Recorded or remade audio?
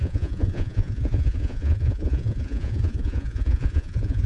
remade